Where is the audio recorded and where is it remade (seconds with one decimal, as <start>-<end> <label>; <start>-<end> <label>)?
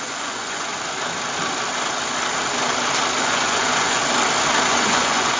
0.0-0.7 remade; 0.7-3.2 recorded; 3.2-4.0 remade; 4.0-4.7 recorded; 4.7-5.4 remade